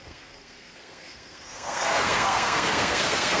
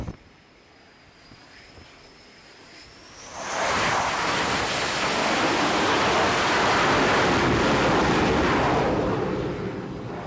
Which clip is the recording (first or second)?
second